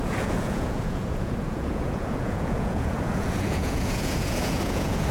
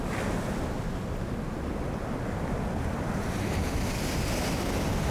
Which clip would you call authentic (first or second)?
second